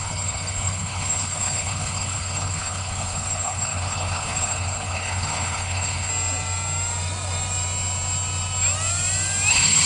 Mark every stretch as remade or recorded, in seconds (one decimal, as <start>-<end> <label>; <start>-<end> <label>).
0.0-6.1 remade; 6.1-9.5 recorded; 9.5-9.9 remade